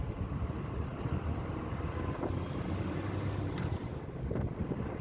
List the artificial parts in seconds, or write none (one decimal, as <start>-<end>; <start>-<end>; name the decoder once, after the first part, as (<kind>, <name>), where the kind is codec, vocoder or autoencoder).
none